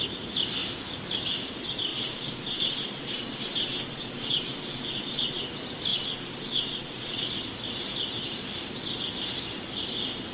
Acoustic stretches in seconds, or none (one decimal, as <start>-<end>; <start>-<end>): 0.0-1.9; 5.4-5.9; 7.3-10.3